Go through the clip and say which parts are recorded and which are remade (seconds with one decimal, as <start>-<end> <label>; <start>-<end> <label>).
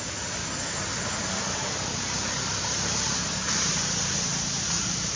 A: 0.0-0.4 remade; 0.4-1.6 recorded; 1.6-5.2 remade